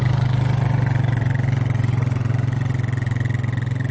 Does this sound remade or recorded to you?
recorded